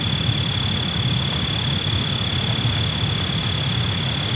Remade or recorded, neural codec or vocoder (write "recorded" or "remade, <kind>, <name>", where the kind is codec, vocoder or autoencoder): recorded